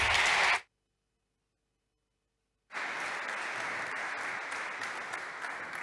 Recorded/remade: recorded